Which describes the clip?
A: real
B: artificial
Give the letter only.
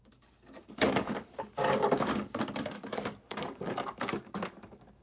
B